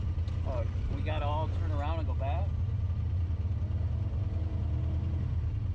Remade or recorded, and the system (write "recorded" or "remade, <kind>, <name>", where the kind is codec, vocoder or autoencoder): recorded